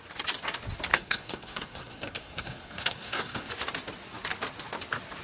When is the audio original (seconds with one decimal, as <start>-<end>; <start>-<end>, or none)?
0.0-0.9; 3.5-5.2